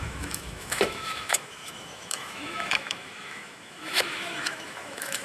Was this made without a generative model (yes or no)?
no